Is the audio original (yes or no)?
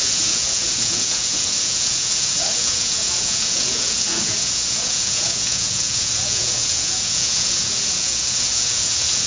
no